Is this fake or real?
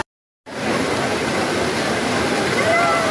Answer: real